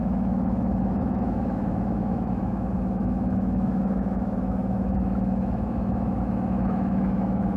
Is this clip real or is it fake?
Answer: fake